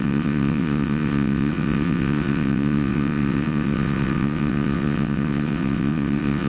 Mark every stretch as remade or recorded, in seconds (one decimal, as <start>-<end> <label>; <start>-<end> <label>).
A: 0.0-6.5 remade